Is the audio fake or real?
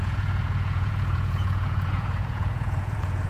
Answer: fake